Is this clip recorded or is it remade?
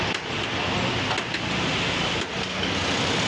recorded